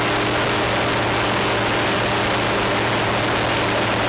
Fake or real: real